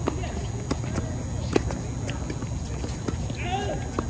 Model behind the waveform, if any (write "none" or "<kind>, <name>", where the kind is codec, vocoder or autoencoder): none